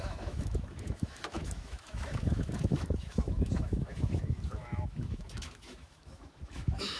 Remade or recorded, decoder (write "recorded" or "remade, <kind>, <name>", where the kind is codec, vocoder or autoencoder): remade, autoencoder, DAC-VAE